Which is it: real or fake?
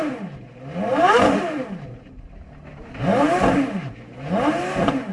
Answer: fake